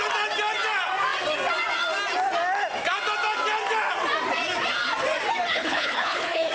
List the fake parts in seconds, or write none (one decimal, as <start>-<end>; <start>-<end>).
5.5-6.5

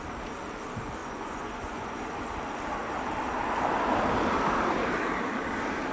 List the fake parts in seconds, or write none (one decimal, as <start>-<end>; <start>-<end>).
1.0-2.3

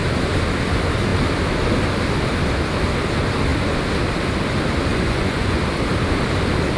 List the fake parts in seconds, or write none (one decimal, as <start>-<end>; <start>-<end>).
4.9-5.6

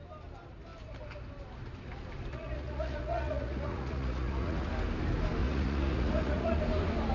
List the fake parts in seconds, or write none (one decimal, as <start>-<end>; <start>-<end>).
2.3-4.7; 5.4-6.6

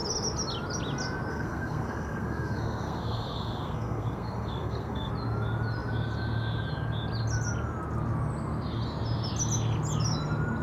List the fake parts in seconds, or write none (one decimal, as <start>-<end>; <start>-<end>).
1.3-5.1

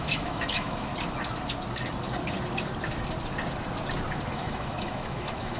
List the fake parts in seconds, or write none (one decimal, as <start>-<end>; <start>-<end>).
0.0-0.9; 4.3-5.6

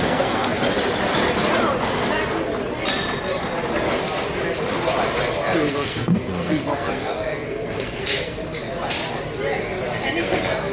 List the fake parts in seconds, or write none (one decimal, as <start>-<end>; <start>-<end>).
0.0-0.6; 5.7-8.4; 10.2-10.7

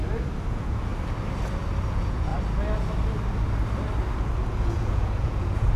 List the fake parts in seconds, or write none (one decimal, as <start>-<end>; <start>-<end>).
0.5-0.9; 1.9-2.3; 4.6-5.8